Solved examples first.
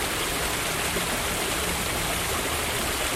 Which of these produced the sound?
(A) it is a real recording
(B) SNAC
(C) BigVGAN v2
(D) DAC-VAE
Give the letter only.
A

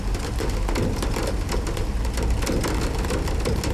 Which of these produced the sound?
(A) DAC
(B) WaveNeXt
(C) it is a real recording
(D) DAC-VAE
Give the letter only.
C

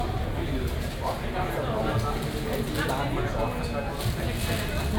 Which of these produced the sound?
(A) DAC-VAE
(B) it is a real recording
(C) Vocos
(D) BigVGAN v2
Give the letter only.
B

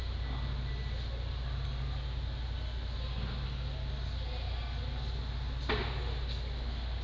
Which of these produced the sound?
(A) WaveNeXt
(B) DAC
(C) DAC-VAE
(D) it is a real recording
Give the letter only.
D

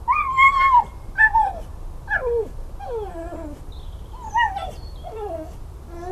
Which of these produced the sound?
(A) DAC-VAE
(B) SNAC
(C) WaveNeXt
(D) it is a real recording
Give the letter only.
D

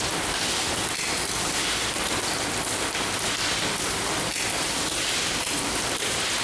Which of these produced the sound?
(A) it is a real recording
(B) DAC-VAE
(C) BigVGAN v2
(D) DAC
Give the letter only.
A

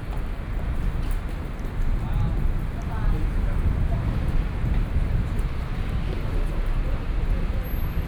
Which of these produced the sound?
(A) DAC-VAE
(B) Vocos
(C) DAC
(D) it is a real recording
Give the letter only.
D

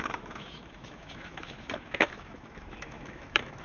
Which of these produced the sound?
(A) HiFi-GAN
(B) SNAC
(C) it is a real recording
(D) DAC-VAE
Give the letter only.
D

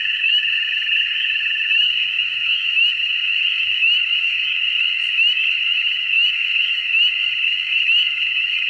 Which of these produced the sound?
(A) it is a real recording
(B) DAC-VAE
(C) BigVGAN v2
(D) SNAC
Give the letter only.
B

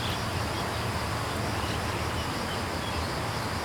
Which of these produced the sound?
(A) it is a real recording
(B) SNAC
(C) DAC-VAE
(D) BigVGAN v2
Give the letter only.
A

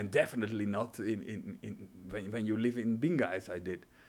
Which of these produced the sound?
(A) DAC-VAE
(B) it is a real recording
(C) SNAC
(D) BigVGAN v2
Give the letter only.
A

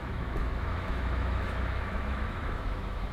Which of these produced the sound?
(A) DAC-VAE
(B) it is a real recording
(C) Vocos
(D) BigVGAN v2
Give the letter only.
A